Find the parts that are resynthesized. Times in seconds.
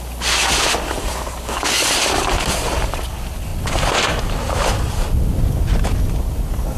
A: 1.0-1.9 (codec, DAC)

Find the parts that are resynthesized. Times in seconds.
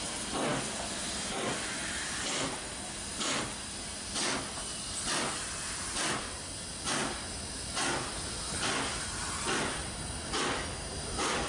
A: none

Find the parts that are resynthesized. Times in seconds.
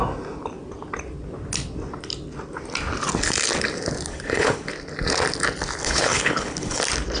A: 4.1-4.7 (codec, HILCodec); 5.8-6.8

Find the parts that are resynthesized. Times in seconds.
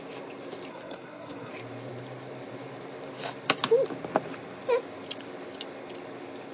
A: 0.7-1.5 (codec, SNAC)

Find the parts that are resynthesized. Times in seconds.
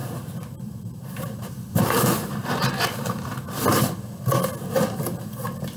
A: 0.0-3.5 (vocoder, BigVGAN v2)